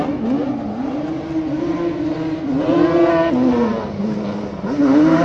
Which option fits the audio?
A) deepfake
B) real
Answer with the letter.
B